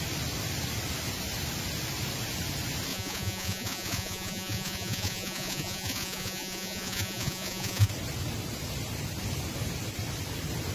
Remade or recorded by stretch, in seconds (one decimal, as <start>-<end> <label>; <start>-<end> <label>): 0.0-2.9 recorded; 2.9-7.9 remade; 7.9-10.7 recorded